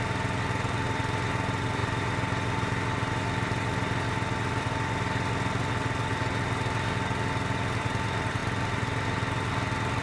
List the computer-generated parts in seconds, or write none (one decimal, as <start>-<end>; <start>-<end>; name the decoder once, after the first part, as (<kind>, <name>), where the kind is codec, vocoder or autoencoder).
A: none